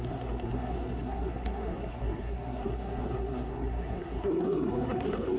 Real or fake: fake